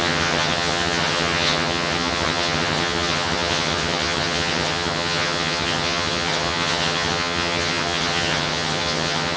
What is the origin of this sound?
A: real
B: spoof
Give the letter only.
B